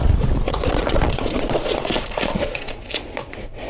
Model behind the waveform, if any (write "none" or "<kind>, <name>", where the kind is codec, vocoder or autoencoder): vocoder, Vocos